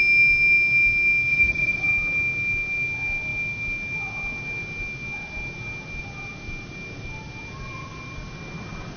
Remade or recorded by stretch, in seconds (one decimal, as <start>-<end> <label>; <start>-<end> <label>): 0.0-1.3 recorded; 1.3-1.9 remade; 1.9-9.0 recorded

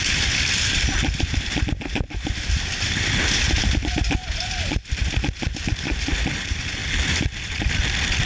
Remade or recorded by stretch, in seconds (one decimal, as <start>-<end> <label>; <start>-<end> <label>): 0.0-8.2 recorded

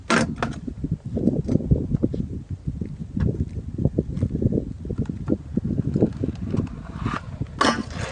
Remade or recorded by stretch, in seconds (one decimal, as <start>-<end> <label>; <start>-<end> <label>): 0.0-8.1 recorded

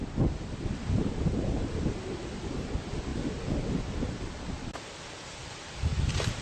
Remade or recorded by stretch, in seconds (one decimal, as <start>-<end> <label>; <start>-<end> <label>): 0.0-6.4 recorded